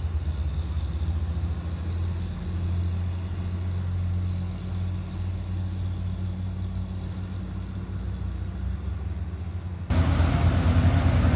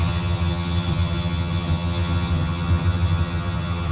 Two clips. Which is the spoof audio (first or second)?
second